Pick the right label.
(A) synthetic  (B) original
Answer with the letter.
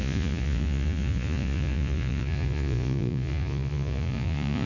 A